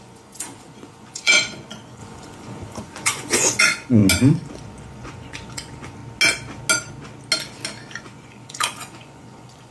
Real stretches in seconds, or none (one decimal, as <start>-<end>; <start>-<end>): 4.0-4.5; 6.0-8.0